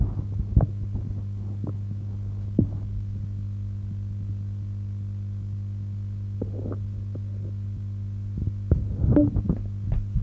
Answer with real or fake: real